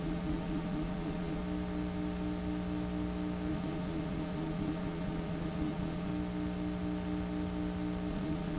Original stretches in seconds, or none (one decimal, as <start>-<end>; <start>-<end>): 1.4-3.5; 6.1-8.1